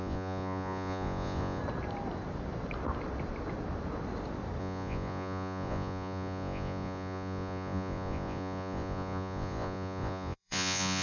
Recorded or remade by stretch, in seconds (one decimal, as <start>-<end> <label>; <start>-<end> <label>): 0.0-1.6 remade; 1.6-4.6 recorded; 4.6-11.0 remade